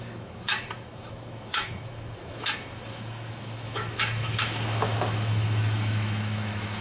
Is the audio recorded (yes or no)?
no